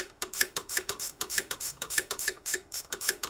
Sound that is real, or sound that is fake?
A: fake